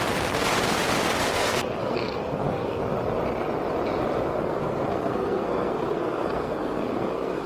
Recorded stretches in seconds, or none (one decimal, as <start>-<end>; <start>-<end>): 0.0-1.2; 2.8-4.3

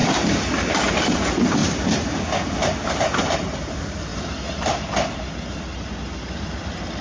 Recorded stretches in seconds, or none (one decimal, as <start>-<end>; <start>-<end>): 0.9-7.0

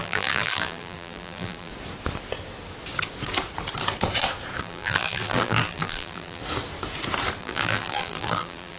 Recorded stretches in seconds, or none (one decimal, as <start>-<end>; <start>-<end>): 1.7-4.6; 6.4-7.4

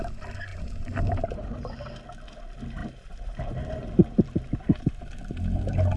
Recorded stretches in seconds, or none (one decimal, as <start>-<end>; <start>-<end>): 0.0-0.5; 1.9-2.8; 5.0-6.0

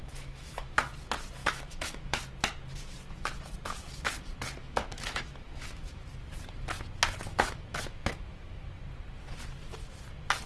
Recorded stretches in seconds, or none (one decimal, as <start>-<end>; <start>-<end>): 0.9-1.4; 2.2-4.6; 6.0-7.3; 8.8-10.5

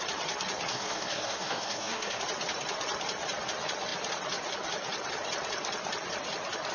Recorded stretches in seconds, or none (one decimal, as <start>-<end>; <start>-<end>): 0.0-0.7; 2.2-6.7

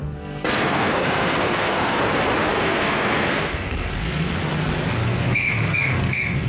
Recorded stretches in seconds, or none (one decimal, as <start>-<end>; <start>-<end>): 2.0-2.5; 4.3-5.0